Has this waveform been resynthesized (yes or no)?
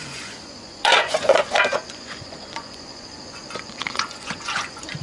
yes